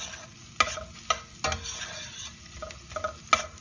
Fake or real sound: real